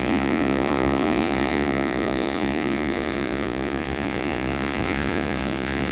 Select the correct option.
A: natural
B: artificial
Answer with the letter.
B